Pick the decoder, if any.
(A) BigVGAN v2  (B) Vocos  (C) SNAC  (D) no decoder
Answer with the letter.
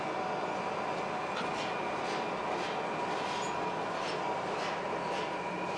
D